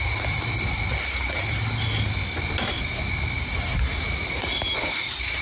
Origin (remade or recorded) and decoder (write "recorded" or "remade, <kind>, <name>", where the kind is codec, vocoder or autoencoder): recorded